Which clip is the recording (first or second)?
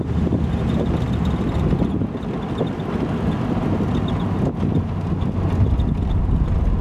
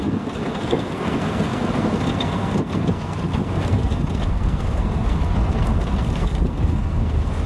first